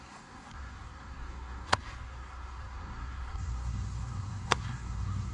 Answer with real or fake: fake